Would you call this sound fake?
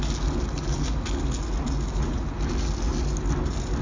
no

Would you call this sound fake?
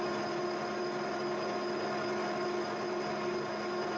no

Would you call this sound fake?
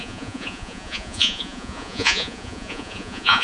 yes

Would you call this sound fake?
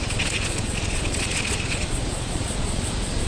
yes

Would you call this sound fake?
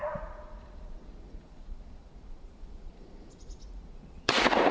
yes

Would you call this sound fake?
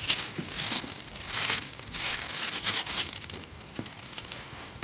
yes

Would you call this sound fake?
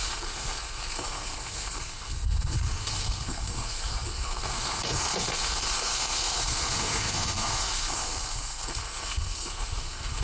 yes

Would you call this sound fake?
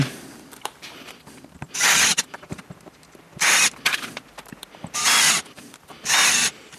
yes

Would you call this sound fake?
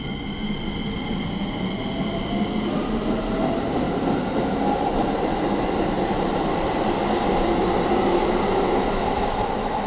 no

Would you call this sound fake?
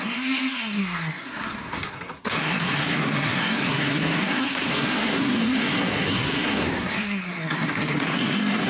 yes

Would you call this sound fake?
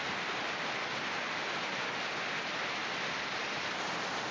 no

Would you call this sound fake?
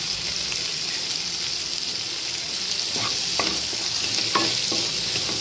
no